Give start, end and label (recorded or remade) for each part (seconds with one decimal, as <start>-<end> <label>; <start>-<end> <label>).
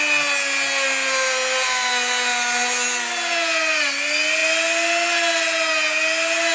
0.0-6.5 recorded